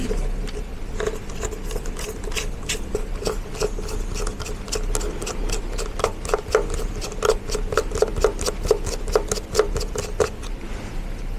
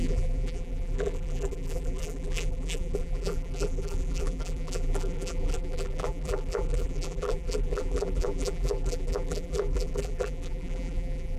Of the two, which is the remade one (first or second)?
second